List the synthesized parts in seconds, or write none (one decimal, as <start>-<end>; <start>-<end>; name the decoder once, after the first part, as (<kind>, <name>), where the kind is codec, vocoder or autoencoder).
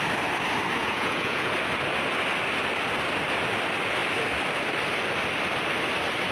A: 0.8-1.5 (vocoder, Vocos)